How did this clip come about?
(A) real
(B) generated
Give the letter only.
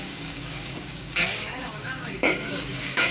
B